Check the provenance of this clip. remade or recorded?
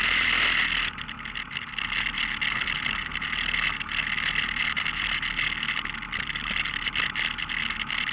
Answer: recorded